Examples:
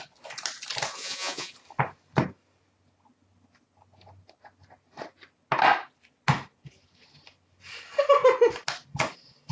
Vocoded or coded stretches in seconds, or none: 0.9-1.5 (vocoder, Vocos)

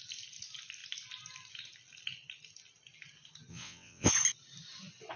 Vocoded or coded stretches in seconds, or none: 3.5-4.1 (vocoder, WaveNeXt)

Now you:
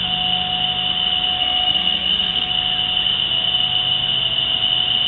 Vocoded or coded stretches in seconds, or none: 1.4-2.5 (codec, SNAC)

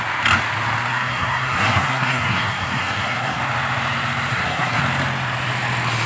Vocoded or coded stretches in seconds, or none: 0.9-3.4 (codec, SNAC); 4.3-4.8

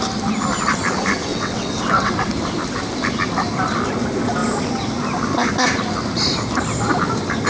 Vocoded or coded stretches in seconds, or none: 1.3-2.1 (vocoder, WaveNeXt)